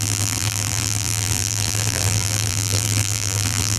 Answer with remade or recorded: remade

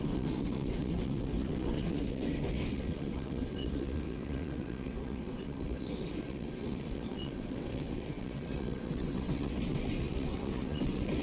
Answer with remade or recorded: remade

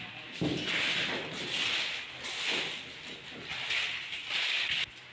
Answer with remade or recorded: recorded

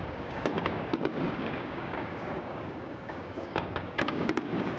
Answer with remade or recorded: remade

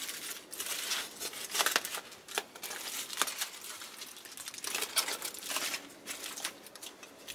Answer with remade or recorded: recorded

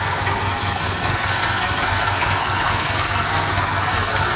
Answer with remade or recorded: remade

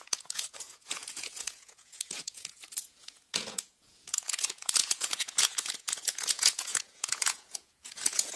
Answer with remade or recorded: remade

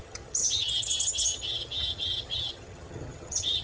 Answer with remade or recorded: remade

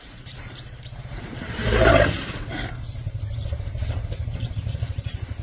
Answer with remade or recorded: remade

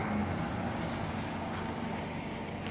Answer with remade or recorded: remade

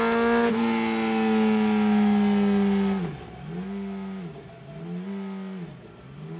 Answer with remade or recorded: recorded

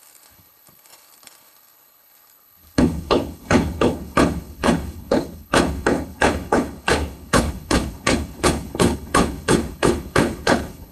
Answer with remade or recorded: remade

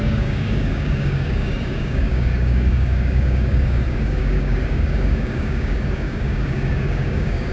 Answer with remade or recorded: remade